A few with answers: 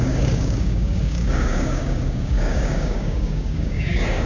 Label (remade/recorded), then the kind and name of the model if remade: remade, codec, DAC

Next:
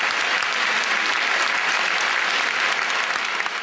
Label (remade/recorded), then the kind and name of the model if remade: recorded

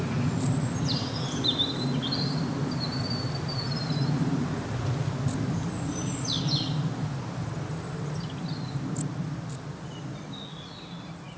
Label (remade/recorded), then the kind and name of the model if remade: recorded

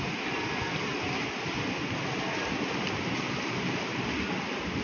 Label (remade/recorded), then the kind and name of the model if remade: recorded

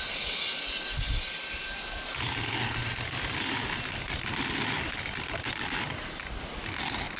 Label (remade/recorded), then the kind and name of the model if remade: recorded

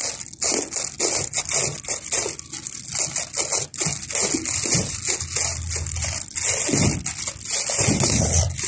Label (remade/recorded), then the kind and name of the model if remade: recorded